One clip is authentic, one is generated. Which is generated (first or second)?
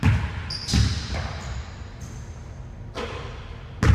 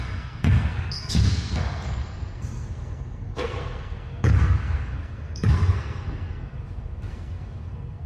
second